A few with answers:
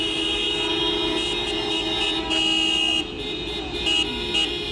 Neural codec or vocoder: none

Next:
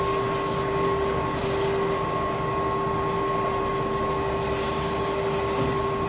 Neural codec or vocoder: none